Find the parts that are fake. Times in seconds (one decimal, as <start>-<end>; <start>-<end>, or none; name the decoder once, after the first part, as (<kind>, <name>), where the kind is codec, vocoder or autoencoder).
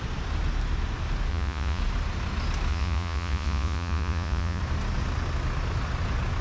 1.3-1.8 (vocoder, Vocos); 2.7-4.6